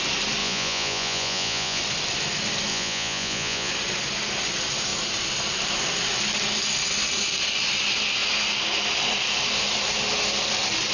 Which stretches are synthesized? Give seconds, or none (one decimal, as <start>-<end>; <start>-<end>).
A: 0.4-1.8; 2.7-3.7